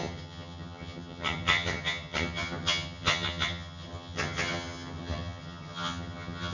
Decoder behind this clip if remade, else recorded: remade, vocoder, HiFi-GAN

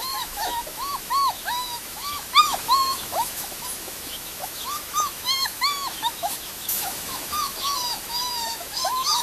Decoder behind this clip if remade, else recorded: remade, autoencoder, DAC-VAE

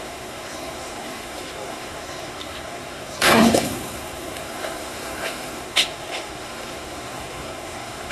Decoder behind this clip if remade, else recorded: remade, codec, SNAC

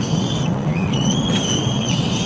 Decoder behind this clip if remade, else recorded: remade, vocoder, WaveNeXt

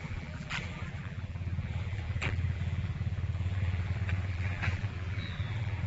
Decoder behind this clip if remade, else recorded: remade, vocoder, BigVGAN v2